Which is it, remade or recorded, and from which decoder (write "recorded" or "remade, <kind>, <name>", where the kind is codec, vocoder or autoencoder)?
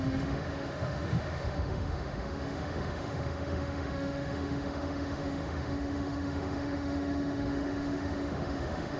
remade, autoencoder, DAC-VAE